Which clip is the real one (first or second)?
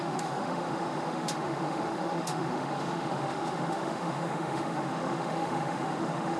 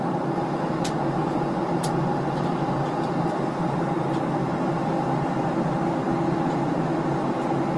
second